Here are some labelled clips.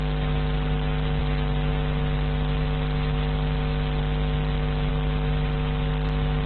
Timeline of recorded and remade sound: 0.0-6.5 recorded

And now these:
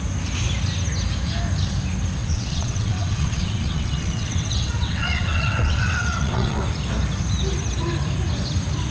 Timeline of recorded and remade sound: 0.0-2.2 recorded; 2.2-6.6 remade; 6.6-8.9 recorded

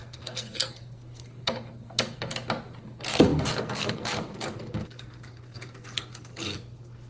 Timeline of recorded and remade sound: 0.0-2.3 remade; 2.3-2.8 recorded; 2.8-7.1 remade

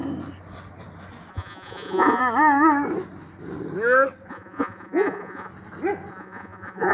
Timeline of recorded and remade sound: 0.0-1.3 recorded; 1.3-2.2 remade; 2.2-4.3 recorded; 4.3-5.5 remade; 5.5-6.1 recorded; 6.1-6.9 remade

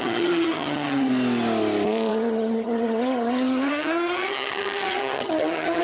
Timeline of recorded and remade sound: 0.0-1.1 remade; 1.1-2.1 recorded; 2.1-5.8 remade